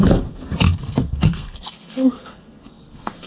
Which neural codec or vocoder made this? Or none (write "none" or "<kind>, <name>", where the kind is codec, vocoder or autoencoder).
codec, SNAC